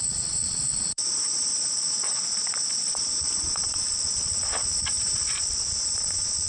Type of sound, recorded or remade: remade